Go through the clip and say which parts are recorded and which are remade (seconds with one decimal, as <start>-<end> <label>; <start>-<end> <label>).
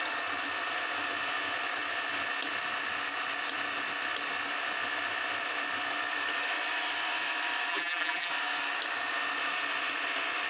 0.0-7.7 recorded; 7.7-8.3 remade; 8.3-10.5 recorded